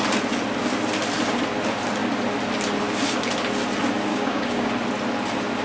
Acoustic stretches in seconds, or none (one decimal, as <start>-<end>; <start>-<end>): 0.0-4.1; 4.7-5.6